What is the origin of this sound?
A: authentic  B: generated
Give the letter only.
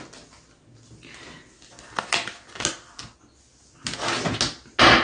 A